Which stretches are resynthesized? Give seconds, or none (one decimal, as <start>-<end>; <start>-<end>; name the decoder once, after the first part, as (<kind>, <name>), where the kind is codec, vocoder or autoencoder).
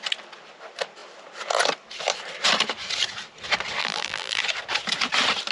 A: 3.8-4.4 (vocoder, BigVGAN v2)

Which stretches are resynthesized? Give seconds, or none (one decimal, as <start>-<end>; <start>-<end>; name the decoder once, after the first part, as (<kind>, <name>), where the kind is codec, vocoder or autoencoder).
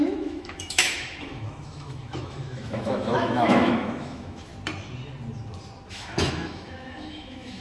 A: 0.0-4.5 (autoencoder, DAC-VAE); 5.9-7.6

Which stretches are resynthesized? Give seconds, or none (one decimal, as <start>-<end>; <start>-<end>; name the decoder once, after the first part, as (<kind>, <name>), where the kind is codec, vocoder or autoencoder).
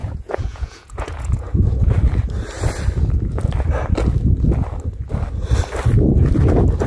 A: 0.0-1.9 (vocoder, Vocos)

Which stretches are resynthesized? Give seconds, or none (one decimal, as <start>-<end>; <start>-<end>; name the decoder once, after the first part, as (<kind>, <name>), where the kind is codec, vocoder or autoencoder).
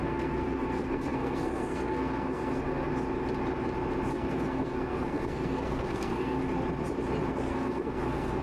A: 0.0-2.9 (codec, SNAC); 4.1-6.4; 7.3-8.4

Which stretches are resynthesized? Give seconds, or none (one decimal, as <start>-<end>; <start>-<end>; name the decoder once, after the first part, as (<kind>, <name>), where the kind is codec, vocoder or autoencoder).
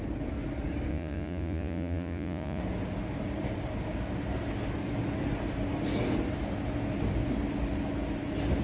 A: 0.9-2.6 (vocoder, Vocos)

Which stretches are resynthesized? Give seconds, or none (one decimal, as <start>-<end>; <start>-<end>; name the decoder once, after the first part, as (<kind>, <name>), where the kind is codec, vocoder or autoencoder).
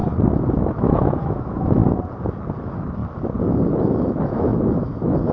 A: 0.5-1.8 (autoencoder, DAC-VAE); 2.6-3.0; 3.8-5.3